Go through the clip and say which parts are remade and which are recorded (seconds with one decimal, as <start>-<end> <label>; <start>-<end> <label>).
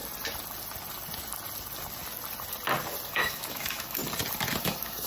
0.0-3.1 recorded; 3.1-4.0 remade; 4.0-4.6 recorded; 4.6-5.1 remade